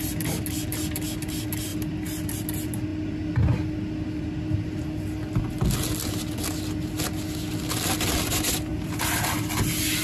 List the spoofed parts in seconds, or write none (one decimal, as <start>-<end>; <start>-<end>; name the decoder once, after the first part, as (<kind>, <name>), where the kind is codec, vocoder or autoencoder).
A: 8.7-9.6 (vocoder, BigVGAN v2)